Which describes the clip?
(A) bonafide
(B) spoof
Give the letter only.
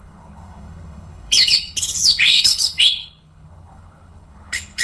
B